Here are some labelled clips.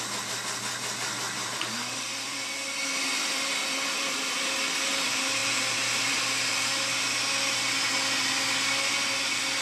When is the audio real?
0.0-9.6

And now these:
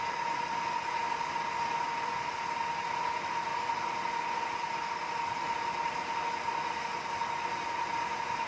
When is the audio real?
0.0-8.5

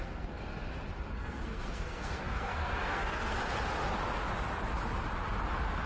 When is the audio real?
0.4-1.1; 3.4-5.9

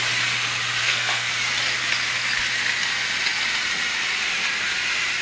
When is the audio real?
0.0-0.8; 1.3-5.2